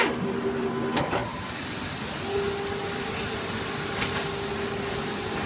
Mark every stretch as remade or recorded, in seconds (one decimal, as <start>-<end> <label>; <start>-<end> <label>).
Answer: 0.0-5.5 recorded

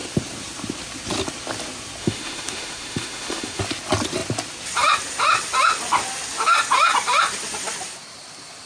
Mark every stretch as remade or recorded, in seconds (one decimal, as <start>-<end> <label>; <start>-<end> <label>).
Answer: 0.0-2.0 recorded; 2.0-3.6 remade; 3.6-8.7 recorded